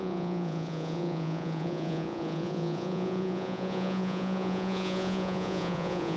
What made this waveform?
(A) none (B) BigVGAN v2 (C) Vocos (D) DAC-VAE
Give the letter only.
C